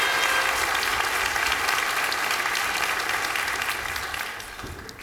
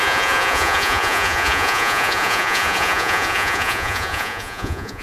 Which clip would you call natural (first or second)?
first